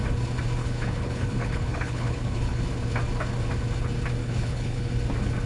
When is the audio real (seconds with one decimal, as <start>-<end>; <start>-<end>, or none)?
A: 0.0-0.6; 2.6-4.2; 4.9-5.5